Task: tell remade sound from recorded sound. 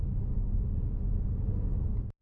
recorded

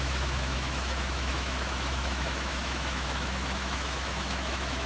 remade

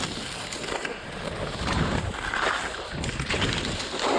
recorded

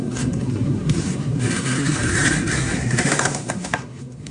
remade